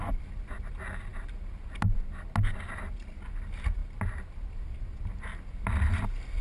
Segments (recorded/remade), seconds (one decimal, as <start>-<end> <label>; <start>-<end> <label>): 0.0-6.4 recorded